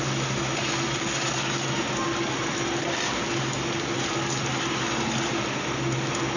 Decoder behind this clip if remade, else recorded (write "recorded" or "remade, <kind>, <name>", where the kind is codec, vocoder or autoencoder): recorded